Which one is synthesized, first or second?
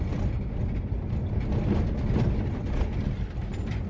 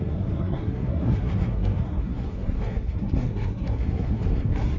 second